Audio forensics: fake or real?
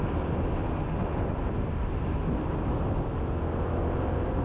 real